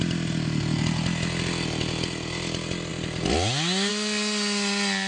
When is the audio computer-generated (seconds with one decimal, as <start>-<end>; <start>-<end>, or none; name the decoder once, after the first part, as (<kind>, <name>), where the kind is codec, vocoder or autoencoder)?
none